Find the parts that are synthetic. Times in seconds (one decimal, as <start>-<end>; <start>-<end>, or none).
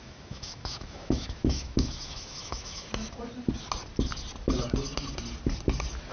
0.0-2.9